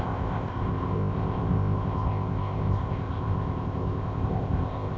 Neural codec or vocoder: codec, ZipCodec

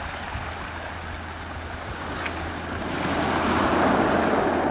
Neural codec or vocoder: none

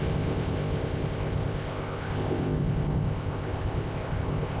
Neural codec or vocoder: codec, ZipCodec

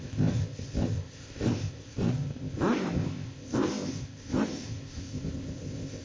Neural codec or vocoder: codec, ZipCodec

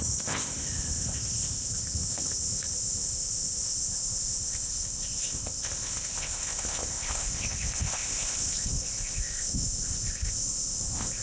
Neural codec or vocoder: codec, ZipCodec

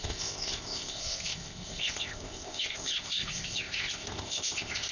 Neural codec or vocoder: codec, ZipCodec